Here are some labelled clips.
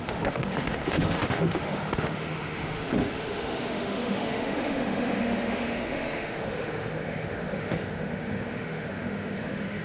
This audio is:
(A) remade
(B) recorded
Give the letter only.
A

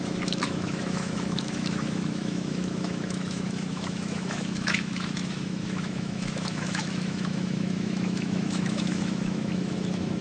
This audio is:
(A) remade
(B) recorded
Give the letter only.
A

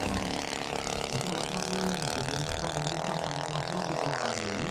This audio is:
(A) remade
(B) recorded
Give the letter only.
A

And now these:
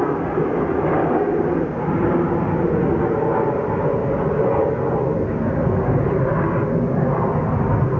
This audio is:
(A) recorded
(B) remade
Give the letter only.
A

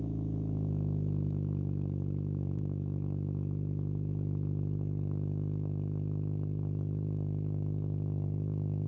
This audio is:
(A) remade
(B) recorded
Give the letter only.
A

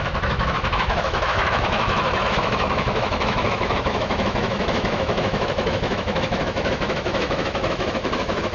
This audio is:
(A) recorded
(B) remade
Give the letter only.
B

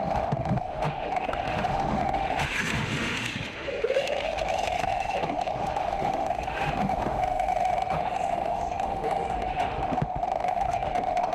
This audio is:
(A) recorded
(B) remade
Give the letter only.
B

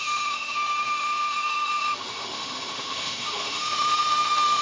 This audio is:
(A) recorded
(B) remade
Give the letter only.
B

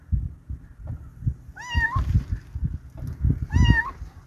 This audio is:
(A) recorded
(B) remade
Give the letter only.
A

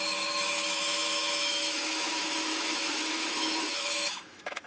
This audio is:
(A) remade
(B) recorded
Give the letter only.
A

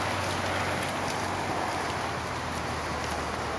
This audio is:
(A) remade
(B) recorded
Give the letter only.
B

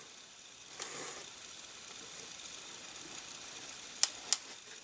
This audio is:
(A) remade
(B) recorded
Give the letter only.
B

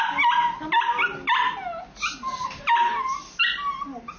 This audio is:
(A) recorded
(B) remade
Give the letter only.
A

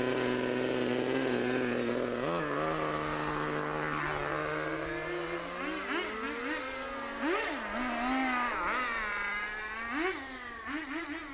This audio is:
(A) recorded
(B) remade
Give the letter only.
A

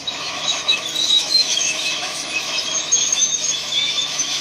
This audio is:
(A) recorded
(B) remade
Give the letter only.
B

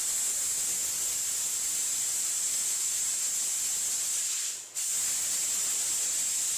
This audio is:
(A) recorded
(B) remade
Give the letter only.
A